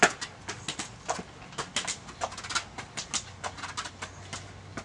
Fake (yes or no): no